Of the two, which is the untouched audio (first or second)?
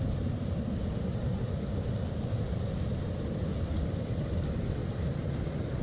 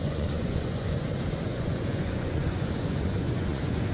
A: first